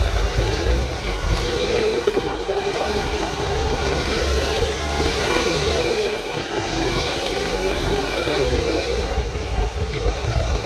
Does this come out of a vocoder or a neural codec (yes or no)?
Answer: yes